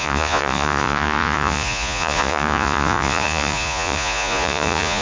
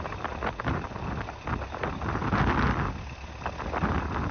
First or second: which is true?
second